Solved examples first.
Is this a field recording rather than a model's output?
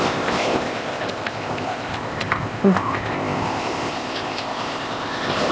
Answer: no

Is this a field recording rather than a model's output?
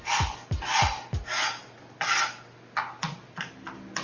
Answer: yes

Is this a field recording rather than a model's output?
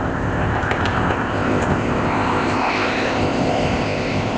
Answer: no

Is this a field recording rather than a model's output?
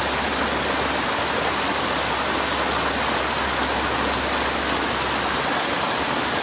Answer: yes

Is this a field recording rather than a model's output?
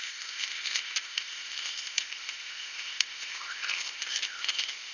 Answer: no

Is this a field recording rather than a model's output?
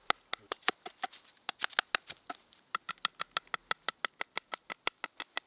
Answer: yes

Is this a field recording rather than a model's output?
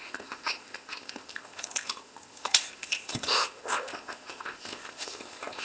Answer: no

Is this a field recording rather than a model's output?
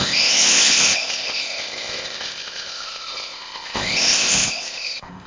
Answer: no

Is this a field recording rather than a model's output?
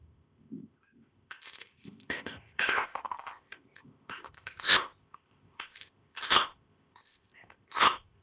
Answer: no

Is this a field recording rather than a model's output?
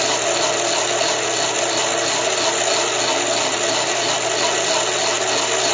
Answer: yes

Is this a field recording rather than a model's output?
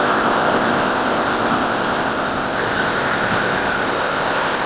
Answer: no